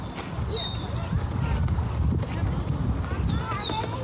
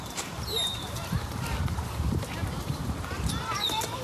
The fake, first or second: second